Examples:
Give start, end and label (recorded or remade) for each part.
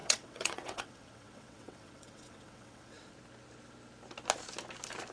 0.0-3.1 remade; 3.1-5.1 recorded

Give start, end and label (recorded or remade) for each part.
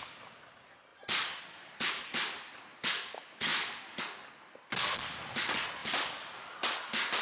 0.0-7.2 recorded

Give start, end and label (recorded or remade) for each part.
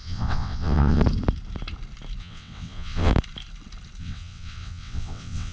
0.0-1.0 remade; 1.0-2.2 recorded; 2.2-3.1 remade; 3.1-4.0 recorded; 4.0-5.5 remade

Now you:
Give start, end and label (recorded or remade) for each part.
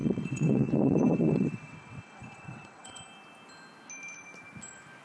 0.0-3.0 remade; 3.0-5.0 recorded